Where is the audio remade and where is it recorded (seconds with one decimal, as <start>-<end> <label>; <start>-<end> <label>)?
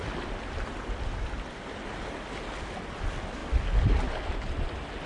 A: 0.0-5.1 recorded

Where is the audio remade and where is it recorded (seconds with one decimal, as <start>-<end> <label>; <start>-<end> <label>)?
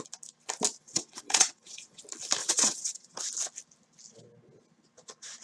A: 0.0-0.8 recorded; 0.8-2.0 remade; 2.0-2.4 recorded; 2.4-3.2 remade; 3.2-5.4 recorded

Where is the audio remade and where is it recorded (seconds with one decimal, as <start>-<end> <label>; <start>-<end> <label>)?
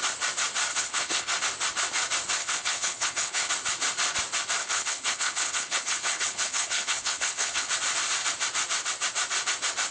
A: 0.0-0.7 recorded; 0.7-1.3 remade; 1.3-2.4 recorded; 2.4-3.5 remade; 3.5-4.6 recorded; 4.6-7.7 remade; 7.7-9.9 recorded